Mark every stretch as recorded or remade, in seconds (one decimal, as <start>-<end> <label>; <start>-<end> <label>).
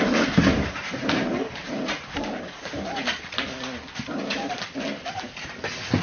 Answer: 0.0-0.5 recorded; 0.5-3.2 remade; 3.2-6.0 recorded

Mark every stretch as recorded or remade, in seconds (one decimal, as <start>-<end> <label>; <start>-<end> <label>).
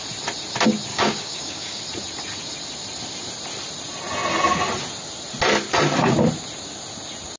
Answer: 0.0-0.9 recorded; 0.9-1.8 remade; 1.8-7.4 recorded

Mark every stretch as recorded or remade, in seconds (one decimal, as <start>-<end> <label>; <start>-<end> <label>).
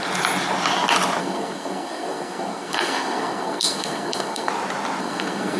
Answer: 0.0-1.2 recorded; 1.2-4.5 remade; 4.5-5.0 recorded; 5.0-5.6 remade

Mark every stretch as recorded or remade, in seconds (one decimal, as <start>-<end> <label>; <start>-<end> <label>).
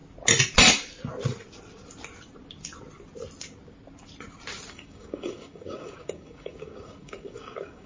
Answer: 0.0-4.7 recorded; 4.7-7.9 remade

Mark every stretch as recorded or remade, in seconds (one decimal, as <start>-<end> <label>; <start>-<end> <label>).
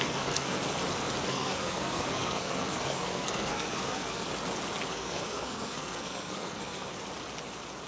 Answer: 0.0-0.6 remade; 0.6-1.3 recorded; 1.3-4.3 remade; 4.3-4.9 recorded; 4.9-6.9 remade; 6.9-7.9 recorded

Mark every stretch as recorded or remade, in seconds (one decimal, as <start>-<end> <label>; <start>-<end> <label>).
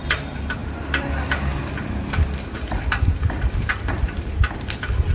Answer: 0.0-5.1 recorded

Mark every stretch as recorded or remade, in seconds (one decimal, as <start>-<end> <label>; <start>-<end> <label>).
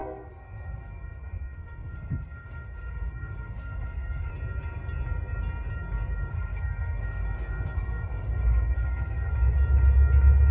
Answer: 0.0-4.3 remade; 4.3-6.3 recorded; 6.3-9.3 remade; 9.3-10.5 recorded